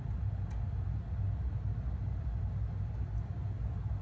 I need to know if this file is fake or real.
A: real